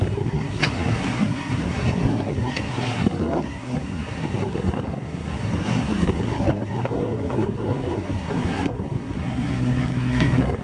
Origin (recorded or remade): remade